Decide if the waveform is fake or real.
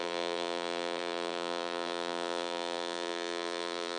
fake